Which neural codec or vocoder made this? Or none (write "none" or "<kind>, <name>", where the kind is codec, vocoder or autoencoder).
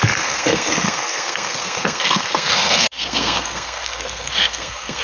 codec, SNAC